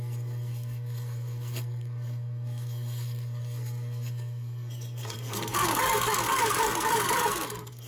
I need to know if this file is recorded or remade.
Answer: remade